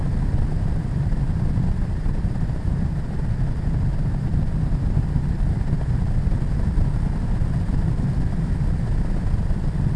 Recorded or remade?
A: recorded